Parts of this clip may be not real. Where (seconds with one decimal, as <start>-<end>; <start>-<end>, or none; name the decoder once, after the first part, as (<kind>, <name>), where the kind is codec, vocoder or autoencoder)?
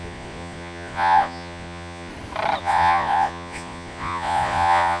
0.0-2.1 (vocoder, Vocos); 2.6-5.0